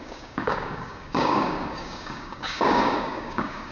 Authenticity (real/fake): fake